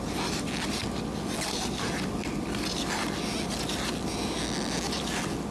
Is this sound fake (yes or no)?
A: no